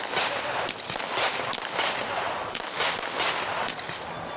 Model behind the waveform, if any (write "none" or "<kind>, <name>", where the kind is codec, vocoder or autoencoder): none